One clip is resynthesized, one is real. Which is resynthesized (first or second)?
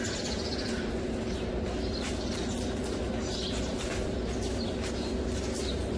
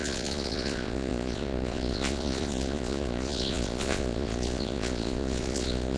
second